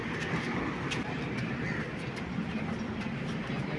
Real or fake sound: real